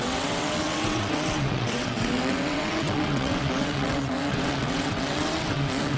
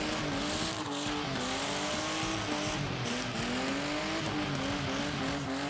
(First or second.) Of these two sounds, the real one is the second